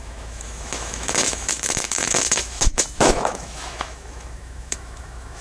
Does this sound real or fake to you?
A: fake